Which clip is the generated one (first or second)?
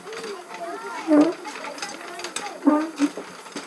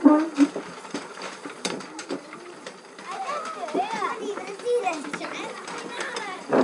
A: second